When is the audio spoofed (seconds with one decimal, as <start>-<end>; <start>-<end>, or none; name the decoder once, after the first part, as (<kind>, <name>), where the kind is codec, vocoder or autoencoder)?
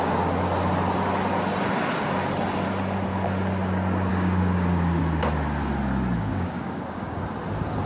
4.1-5.0 (codec, DAC); 6.3-7.2